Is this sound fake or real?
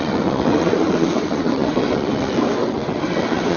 fake